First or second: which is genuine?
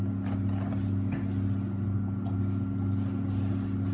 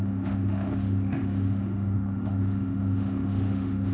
first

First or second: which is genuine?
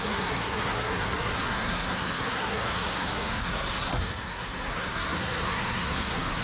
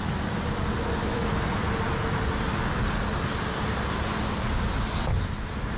second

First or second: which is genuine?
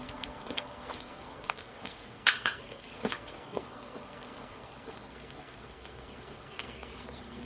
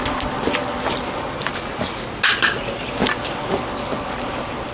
second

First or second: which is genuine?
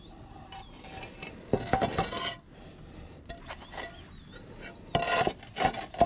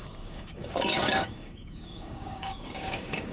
first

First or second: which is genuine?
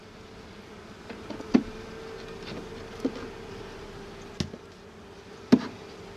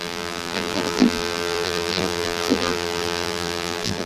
first